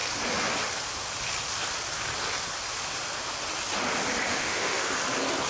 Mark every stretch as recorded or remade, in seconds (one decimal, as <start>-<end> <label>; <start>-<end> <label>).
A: 0.0-4.3 recorded; 4.3-4.9 remade; 4.9-5.5 recorded

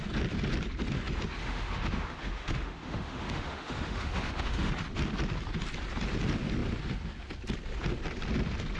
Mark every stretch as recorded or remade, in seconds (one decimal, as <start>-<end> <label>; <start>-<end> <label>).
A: 0.0-1.4 recorded; 1.4-4.7 remade; 4.7-8.8 recorded

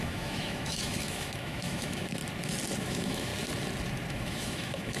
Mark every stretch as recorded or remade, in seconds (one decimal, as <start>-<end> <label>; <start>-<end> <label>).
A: 0.0-2.2 remade; 2.2-2.8 recorded; 2.8-3.3 remade; 3.3-4.1 recorded; 4.1-5.0 remade

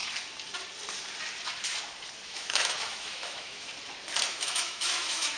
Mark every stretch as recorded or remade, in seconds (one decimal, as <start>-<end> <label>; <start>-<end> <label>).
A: 0.0-2.3 recorded; 2.3-3.7 remade; 3.7-4.3 recorded; 4.3-5.4 remade